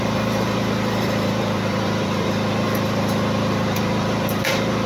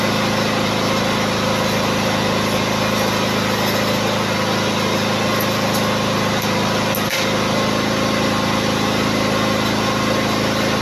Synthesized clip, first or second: first